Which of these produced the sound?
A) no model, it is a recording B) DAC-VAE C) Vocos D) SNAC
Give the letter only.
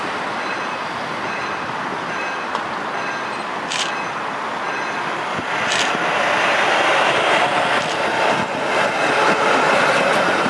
A